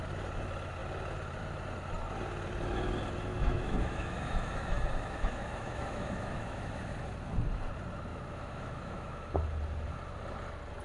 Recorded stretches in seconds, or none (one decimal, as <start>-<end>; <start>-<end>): 0.0-3.3; 6.9-8.1; 9.3-10.8